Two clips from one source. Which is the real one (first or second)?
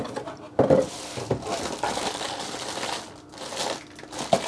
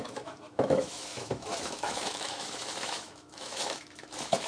first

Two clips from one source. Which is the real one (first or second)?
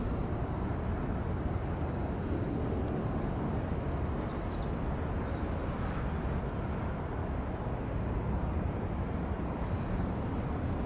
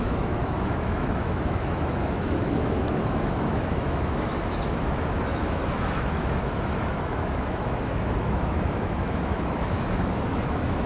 first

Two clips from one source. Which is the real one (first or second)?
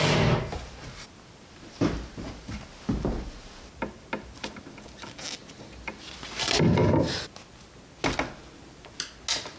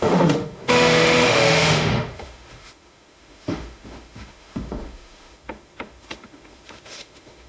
first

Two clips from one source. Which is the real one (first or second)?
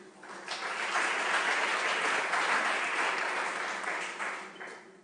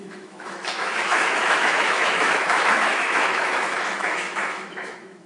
first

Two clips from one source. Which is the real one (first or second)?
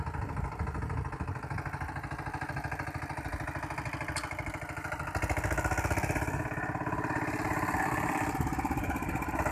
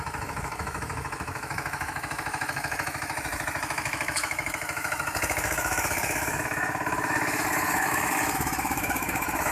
first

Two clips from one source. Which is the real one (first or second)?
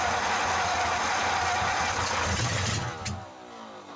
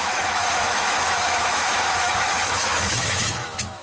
first